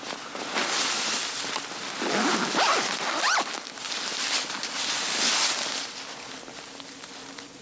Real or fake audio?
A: real